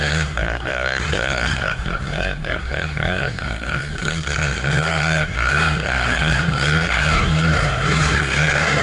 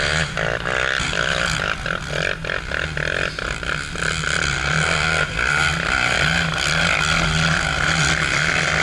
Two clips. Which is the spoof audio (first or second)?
first